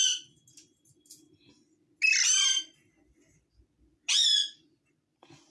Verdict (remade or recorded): recorded